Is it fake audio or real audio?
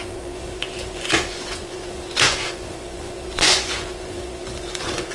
fake